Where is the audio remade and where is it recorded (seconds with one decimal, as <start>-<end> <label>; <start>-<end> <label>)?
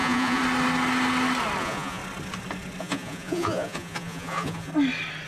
0.0-0.4 remade; 0.4-1.6 recorded; 1.6-2.0 remade; 2.0-2.8 recorded; 2.8-4.7 remade; 4.7-5.3 recorded